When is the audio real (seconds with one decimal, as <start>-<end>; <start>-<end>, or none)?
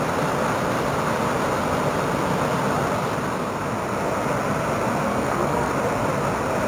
0.0-5.0; 5.7-6.7